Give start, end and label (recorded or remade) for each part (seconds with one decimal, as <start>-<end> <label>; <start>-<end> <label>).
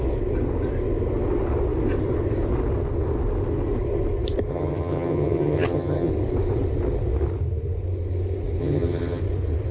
0.0-4.5 recorded; 4.5-6.1 remade; 6.1-8.6 recorded; 8.6-9.2 remade; 9.2-9.7 recorded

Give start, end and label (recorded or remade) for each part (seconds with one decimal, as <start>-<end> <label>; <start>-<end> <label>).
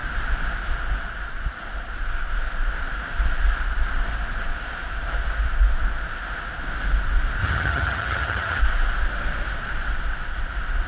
0.0-7.4 recorded; 7.4-8.6 remade; 8.6-10.9 recorded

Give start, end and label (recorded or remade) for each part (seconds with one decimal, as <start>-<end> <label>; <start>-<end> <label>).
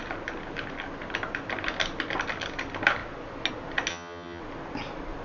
0.0-3.9 recorded; 3.9-4.4 remade; 4.4-5.2 recorded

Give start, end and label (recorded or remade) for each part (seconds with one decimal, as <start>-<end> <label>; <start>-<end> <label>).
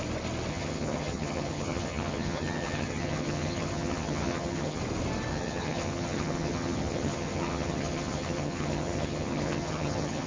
0.0-0.5 recorded; 0.5-4.8 remade; 4.8-5.3 recorded; 5.3-10.3 remade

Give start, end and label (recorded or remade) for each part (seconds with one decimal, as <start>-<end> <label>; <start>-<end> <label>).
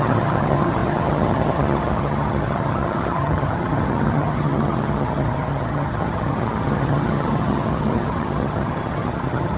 0.0-9.6 remade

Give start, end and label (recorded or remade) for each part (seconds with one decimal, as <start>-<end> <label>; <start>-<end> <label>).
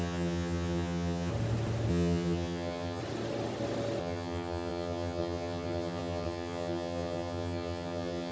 0.0-1.3 remade; 1.3-1.9 recorded; 1.9-3.0 remade; 3.0-4.0 recorded; 4.0-8.3 remade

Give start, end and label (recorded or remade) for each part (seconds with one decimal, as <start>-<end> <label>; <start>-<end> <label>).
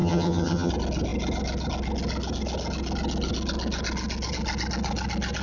0.0-0.7 remade; 0.7-5.4 recorded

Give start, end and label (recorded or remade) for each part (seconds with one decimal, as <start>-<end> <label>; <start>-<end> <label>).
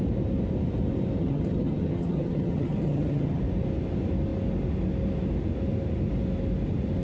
0.0-1.2 recorded; 1.2-3.4 remade; 3.4-7.0 recorded